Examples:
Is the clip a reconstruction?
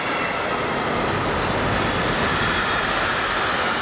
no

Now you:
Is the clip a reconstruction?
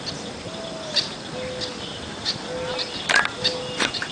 no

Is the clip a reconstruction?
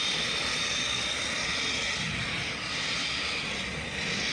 no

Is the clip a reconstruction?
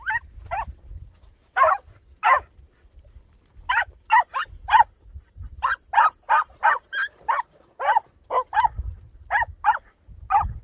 no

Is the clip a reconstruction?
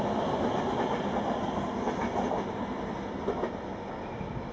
no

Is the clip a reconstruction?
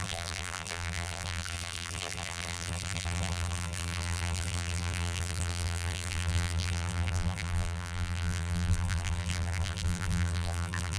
yes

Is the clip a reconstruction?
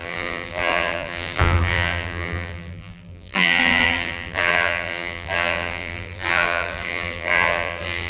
yes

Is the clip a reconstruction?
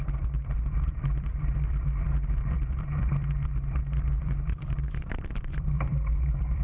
yes